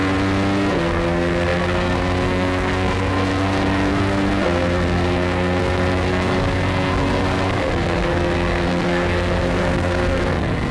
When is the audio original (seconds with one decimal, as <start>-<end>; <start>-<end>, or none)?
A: 0.0-0.7